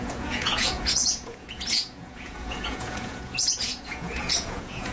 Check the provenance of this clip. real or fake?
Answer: fake